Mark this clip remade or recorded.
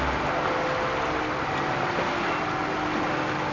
recorded